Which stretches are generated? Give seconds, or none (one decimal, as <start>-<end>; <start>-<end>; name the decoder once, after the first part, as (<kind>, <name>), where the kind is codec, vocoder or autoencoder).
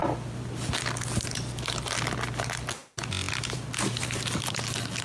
none